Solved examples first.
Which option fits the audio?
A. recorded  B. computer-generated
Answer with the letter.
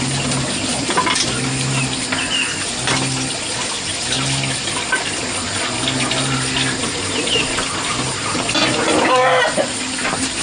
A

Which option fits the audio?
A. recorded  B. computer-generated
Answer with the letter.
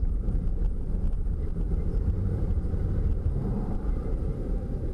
B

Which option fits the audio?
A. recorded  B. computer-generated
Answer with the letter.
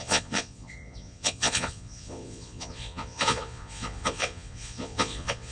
B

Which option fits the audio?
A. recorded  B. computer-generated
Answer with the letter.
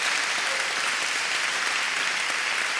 A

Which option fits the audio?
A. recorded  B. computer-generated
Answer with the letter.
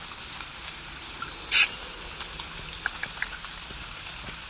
A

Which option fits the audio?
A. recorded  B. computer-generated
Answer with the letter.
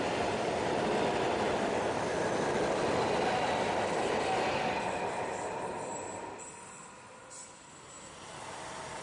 A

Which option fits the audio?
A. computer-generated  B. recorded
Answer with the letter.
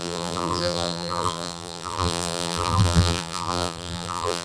A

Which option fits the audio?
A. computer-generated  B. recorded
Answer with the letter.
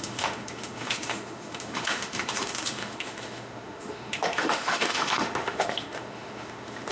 A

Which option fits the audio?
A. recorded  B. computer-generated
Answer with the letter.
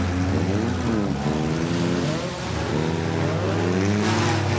A